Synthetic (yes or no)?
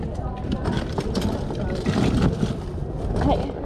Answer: no